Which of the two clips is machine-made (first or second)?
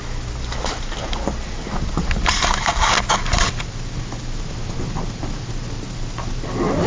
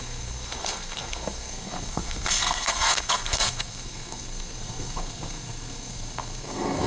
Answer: second